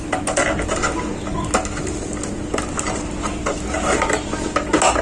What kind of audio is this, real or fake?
real